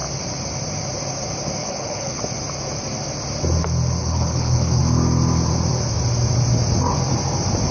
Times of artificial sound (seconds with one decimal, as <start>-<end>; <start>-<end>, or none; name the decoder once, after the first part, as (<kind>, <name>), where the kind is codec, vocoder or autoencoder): 1.6-2.2 (codec, HILCodec); 4.0-4.8